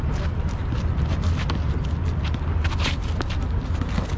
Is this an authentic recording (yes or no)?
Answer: yes